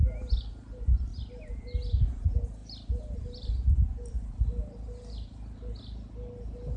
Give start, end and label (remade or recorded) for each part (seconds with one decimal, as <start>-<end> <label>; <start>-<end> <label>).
0.0-6.8 recorded